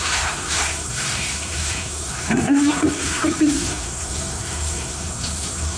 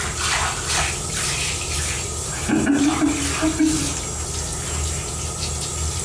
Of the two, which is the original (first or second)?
second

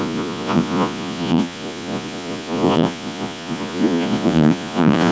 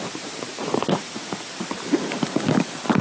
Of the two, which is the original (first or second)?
second